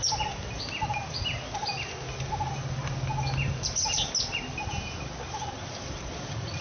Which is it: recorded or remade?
recorded